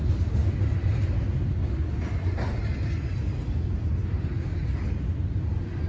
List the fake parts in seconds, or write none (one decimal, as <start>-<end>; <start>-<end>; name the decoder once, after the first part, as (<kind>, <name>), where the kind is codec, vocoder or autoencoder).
none

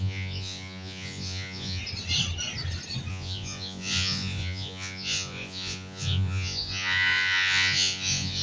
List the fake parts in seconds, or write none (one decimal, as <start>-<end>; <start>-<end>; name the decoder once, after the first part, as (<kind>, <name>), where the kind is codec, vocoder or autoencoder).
0.0-1.8 (vocoder, Vocos); 3.1-8.4